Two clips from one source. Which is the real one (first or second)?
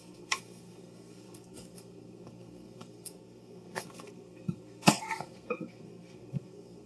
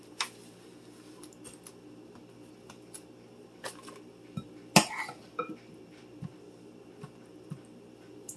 second